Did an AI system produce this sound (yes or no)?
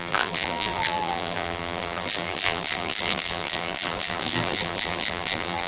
yes